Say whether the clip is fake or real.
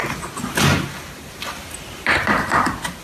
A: real